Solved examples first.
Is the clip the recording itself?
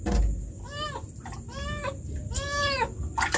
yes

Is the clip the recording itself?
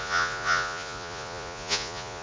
no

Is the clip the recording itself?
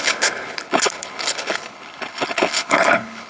no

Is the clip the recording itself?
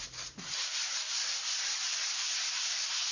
no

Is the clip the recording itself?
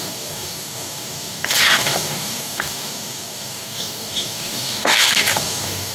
no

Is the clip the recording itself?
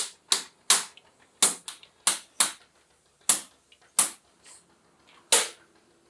yes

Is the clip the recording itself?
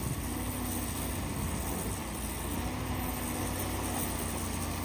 yes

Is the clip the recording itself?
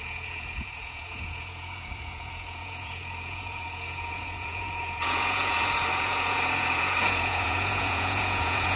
no